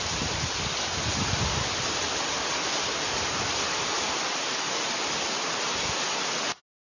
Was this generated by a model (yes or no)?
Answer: no